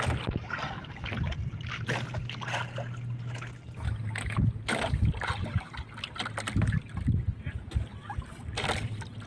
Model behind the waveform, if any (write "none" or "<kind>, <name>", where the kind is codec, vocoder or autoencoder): none